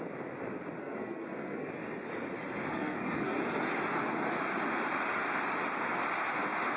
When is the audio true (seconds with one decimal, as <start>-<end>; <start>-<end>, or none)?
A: 0.0-0.8; 1.7-2.7; 3.4-6.8

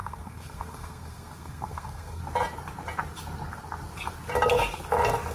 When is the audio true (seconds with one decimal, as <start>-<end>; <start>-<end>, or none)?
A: 2.2-5.3

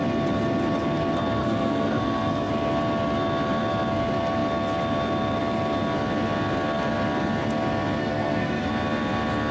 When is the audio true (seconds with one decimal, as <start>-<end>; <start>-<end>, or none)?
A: 0.0-1.4; 2.5-8.0; 8.7-9.5

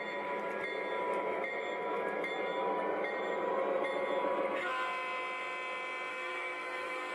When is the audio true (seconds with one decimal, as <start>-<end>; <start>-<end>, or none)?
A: 0.0-6.1

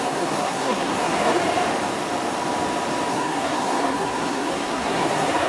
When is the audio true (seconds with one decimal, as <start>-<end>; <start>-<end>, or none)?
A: 1.4-3.1